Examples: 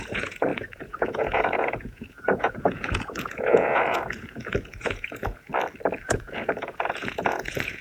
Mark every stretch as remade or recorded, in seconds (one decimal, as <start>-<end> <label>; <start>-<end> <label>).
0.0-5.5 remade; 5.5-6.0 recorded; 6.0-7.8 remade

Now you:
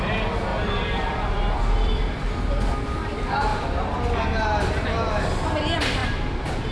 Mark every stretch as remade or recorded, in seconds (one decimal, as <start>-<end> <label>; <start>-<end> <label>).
0.0-0.5 recorded; 0.5-2.2 remade; 2.2-3.5 recorded; 3.5-4.2 remade; 4.2-6.0 recorded; 6.0-6.7 remade

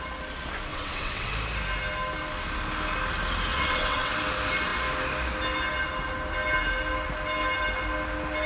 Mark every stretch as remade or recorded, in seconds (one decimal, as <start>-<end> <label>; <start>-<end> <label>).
0.0-0.7 recorded; 0.7-1.3 remade; 1.3-3.5 recorded; 3.5-4.1 remade; 4.1-8.5 recorded

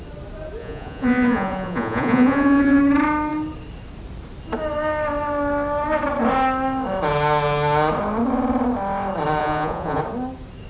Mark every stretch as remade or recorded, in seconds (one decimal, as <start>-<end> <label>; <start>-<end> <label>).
0.0-0.6 recorded; 0.6-2.8 remade; 2.8-9.4 recorded; 9.4-10.0 remade; 10.0-10.7 recorded